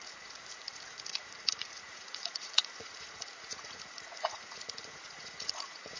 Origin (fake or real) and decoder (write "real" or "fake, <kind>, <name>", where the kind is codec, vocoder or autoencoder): fake, vocoder, Vocos